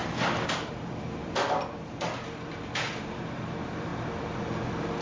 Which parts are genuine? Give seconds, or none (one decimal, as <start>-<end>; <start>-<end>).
3.9-5.0